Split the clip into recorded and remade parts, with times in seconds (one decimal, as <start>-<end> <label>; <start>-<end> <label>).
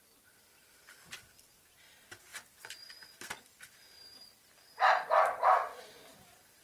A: 0.0-2.3 recorded; 2.3-6.6 remade